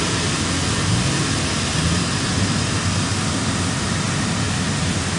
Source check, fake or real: real